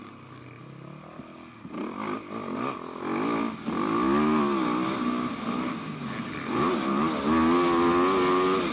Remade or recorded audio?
recorded